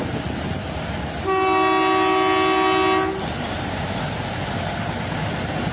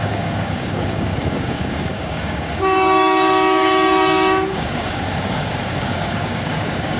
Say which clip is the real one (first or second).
first